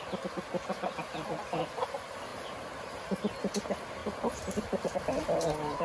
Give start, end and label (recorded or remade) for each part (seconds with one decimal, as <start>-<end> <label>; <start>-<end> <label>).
0.0-5.8 recorded